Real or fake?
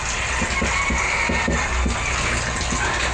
real